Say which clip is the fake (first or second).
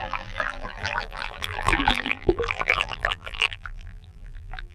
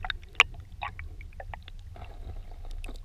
first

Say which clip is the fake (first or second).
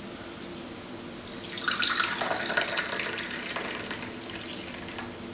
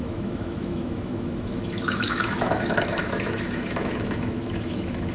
second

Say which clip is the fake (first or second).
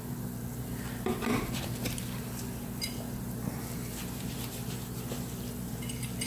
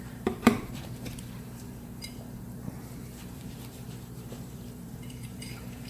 second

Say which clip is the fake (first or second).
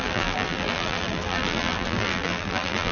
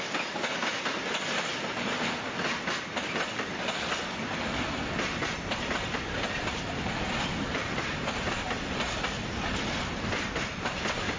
first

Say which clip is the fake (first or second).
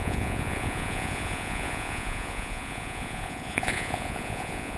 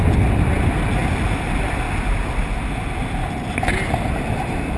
first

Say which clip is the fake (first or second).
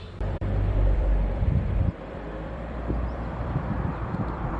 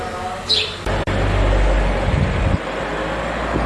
first